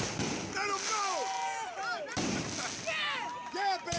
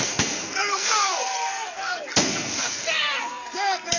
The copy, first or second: second